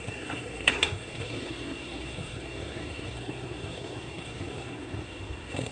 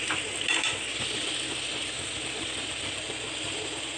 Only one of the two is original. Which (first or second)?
second